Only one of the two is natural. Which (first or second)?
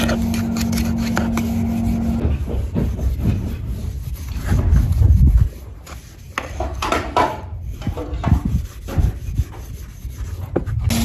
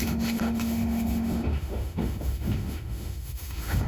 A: first